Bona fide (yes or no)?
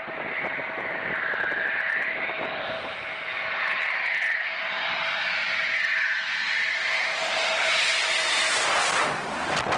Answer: yes